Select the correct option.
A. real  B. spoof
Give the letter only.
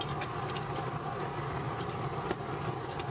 A